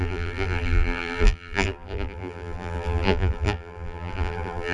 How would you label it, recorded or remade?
remade